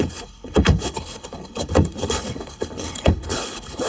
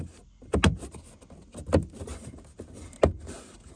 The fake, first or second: first